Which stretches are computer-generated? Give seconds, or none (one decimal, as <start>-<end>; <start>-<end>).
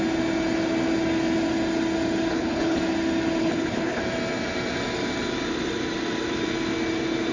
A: 2.3-2.8; 3.4-4.0